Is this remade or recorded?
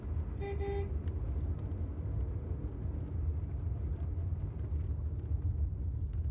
recorded